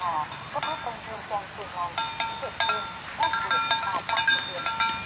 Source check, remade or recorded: recorded